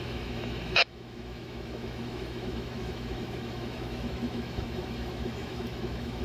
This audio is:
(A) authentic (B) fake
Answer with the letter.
B